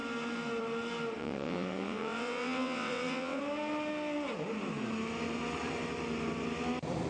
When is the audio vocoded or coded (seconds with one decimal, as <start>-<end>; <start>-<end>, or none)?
1.2-3.4

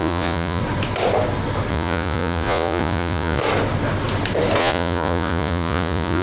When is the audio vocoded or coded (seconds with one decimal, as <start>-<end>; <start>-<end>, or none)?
0.0-0.6; 1.7-3.4; 4.6-6.2

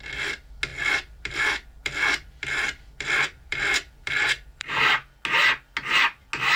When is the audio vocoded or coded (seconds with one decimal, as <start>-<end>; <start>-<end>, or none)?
0.7-4.7

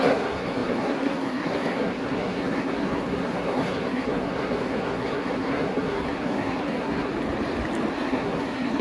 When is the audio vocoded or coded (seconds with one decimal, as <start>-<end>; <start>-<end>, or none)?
0.0-7.1; 7.9-8.8

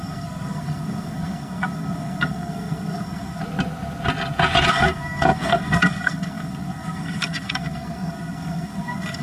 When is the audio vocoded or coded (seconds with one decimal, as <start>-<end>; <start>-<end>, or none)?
0.0-3.4; 4.7-9.2

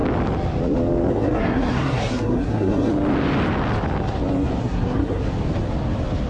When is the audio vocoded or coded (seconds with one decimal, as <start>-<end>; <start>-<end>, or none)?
1.1-2.9; 4.6-5.2

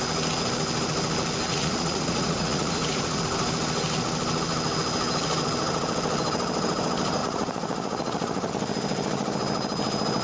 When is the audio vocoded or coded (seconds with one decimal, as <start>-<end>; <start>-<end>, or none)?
1.5-3.2; 7.2-8.5